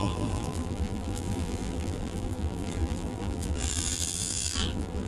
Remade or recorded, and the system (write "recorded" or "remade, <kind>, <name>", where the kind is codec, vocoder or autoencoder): remade, vocoder, BigVGAN v2